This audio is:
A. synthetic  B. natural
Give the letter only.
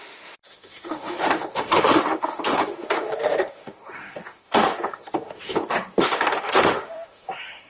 A